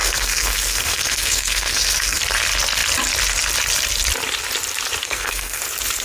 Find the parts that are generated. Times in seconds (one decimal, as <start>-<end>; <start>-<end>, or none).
0.0-2.2; 5.0-5.6